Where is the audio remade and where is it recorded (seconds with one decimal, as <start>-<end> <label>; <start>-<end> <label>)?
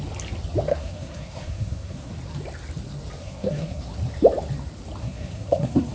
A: 0.0-0.7 recorded; 0.7-2.1 remade; 2.1-3.2 recorded; 3.2-3.8 remade; 3.8-5.0 recorded; 5.0-5.9 remade